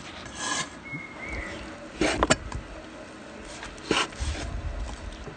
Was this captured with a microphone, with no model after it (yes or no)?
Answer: yes